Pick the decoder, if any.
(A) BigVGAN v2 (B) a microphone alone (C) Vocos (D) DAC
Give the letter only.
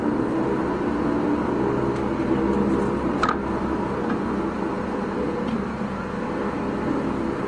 B